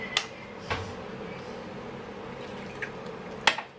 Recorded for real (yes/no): yes